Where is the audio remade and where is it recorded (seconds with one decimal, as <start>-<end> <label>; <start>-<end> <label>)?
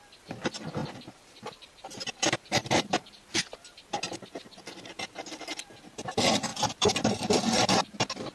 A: 0.0-0.8 recorded; 0.8-3.5 remade; 3.5-6.5 recorded; 6.5-7.7 remade; 7.7-8.3 recorded